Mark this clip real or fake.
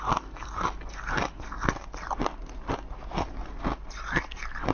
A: real